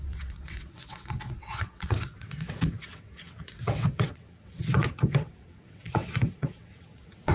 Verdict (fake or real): fake